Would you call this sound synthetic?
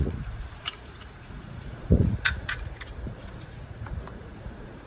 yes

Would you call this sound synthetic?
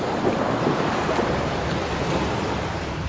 no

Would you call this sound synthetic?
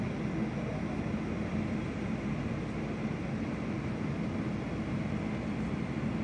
no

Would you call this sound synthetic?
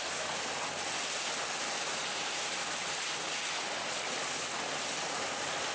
no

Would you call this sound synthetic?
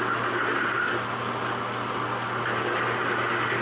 no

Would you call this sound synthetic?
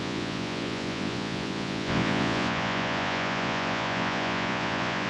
yes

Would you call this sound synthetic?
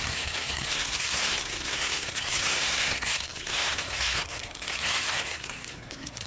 yes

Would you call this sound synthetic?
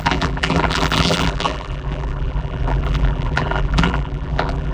yes